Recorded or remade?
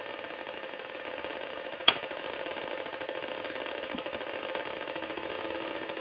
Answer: remade